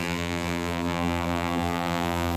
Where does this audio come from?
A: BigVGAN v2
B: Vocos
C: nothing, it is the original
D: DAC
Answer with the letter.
A